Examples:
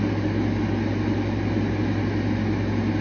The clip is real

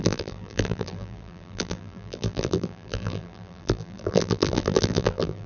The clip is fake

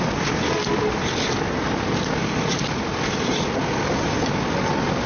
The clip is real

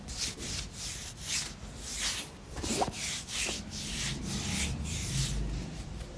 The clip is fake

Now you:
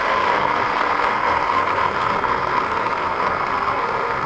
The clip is fake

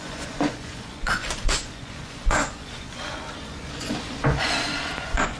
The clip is fake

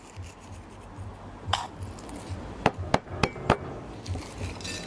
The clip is real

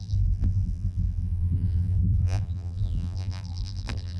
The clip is fake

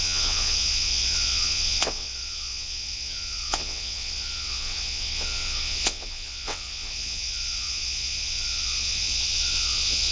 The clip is fake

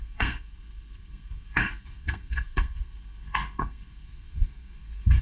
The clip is fake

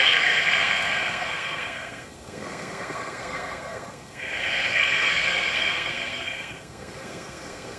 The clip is fake